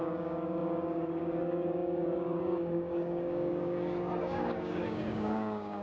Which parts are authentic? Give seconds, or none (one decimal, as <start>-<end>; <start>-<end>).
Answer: none